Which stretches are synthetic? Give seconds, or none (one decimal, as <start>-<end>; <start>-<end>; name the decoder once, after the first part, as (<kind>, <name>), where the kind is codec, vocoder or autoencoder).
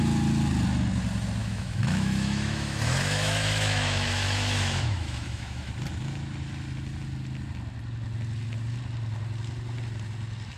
1.4-5.7 (autoencoder, DAC-VAE)